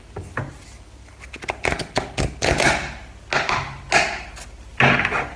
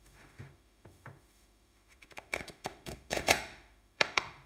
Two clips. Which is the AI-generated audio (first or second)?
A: second